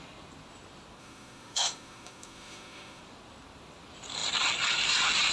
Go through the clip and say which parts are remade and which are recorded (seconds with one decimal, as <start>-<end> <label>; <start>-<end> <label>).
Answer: 0.0-1.0 recorded; 1.0-3.0 remade; 3.0-5.3 recorded